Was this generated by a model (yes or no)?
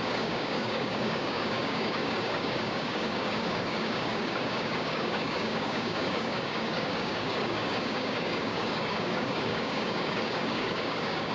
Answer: yes